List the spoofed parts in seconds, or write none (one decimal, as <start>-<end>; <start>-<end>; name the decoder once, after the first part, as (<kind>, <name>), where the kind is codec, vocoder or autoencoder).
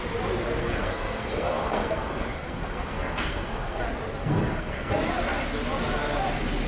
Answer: 0.6-3.8 (codec, SNAC); 4.2-4.9